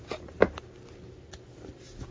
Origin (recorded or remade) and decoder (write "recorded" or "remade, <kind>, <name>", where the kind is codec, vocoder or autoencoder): recorded